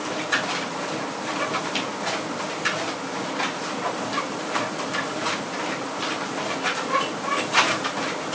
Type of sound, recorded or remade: recorded